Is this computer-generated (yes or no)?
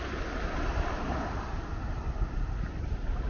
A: no